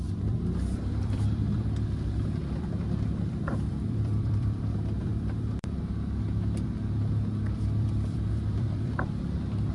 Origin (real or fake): fake